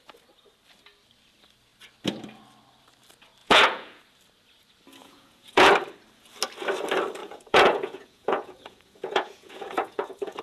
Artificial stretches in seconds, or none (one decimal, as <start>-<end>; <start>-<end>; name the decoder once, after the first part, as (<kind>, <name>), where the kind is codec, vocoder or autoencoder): 3.4-4.0 (vocoder, Vocos); 5.0-5.7; 7.2-10.4